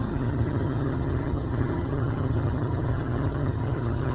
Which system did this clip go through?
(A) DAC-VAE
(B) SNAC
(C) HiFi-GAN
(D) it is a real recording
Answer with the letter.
C